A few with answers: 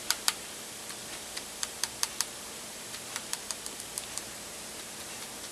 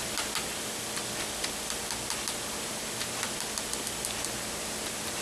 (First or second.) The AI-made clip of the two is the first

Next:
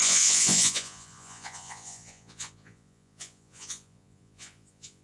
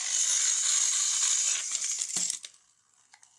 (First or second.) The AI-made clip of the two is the first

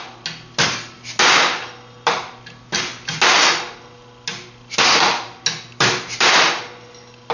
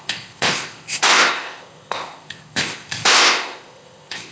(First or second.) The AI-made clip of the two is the second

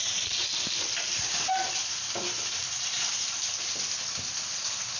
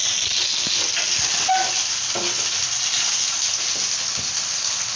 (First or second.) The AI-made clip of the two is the first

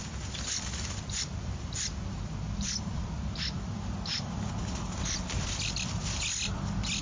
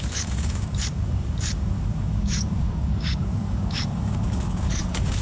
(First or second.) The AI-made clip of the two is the second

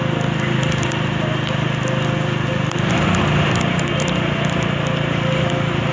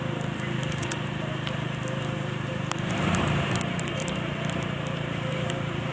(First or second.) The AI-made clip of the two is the second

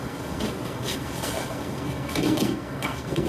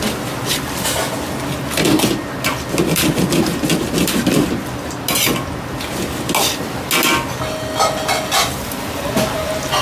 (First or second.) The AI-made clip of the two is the first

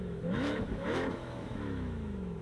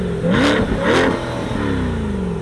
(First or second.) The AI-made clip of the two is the first